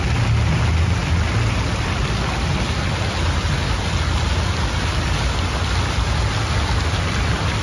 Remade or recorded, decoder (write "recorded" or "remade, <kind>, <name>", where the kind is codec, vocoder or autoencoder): recorded